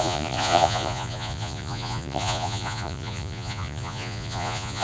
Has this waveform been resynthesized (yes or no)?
yes